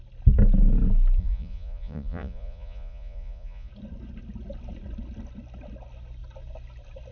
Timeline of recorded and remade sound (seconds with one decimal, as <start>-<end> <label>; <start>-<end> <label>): 0.0-1.2 recorded; 1.2-3.7 remade; 3.7-7.1 recorded